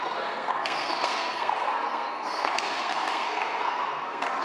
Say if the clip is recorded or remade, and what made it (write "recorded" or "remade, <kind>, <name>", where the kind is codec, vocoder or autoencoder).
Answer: remade, codec, SNAC